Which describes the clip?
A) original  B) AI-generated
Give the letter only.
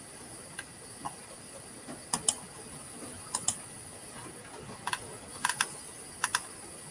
A